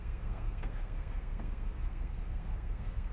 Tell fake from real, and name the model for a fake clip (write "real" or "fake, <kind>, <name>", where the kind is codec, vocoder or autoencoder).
fake, codec, SNAC